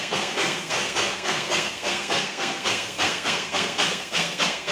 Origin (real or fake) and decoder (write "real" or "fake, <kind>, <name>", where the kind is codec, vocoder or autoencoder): fake, codec, SNAC